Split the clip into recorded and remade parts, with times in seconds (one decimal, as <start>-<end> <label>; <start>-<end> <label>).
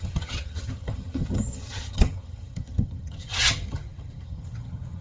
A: 0.0-5.0 remade